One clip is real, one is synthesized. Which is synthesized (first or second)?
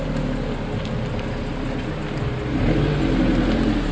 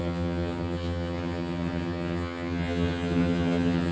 second